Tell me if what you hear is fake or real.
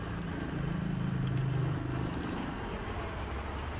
real